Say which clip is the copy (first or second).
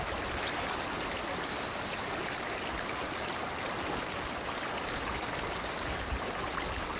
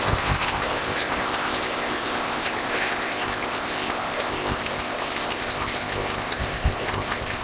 second